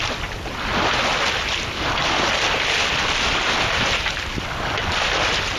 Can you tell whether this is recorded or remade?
recorded